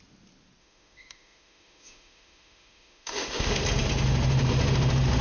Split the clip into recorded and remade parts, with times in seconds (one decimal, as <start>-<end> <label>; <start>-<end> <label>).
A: 0.0-0.6 recorded; 0.6-3.6 remade; 3.6-5.2 recorded